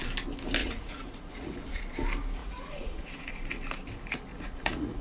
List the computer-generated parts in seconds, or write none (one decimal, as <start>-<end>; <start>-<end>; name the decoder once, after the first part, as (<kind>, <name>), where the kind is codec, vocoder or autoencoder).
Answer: 0.6-1.8 (vocoder, Vocos); 2.4-3.3; 4.3-5.0